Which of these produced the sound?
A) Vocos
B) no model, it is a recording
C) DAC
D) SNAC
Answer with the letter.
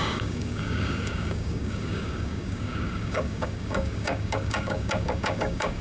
C